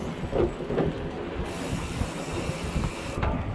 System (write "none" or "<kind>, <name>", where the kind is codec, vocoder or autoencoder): none